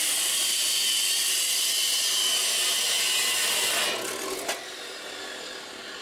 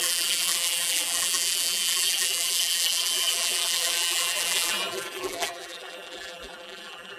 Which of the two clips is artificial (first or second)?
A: second